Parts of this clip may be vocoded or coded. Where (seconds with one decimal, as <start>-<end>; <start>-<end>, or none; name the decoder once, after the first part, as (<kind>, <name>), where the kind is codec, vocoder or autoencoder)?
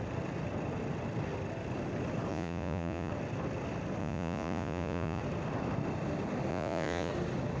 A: 2.3-3.1 (vocoder, Vocos); 4.0-5.2; 6.5-7.1